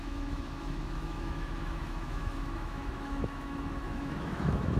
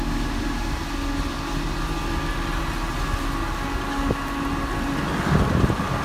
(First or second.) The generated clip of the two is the first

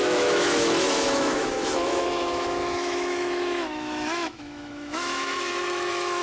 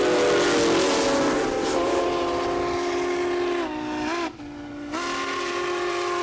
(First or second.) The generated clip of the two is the first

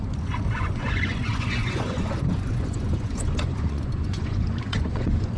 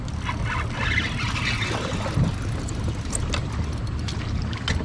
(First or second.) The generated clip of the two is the first